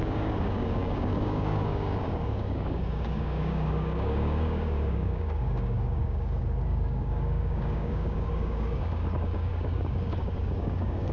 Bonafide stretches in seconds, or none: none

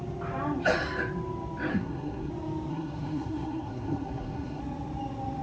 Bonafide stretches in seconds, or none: 0.0-1.7; 2.3-2.7; 4.6-5.4